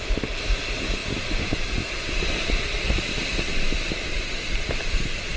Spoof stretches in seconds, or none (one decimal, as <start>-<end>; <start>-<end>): none